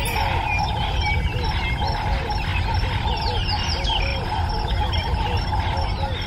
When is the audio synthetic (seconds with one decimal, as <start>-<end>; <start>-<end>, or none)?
2.5-3.3; 4.1-5.5